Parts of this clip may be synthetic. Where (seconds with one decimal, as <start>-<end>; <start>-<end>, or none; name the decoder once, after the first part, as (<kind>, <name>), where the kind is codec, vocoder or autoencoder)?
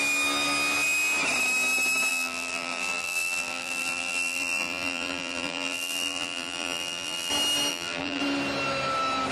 2.1-7.3 (vocoder, BigVGAN v2); 7.7-8.2